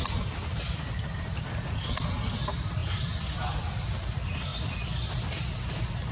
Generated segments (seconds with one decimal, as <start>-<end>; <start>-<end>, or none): 2.8-3.6